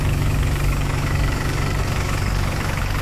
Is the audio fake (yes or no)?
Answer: yes